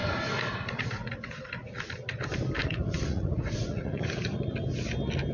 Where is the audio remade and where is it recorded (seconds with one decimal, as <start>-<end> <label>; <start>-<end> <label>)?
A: 0.0-1.1 remade; 1.1-2.6 recorded; 2.6-4.5 remade; 4.5-5.3 recorded